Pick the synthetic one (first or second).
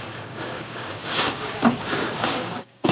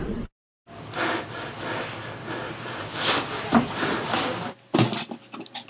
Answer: first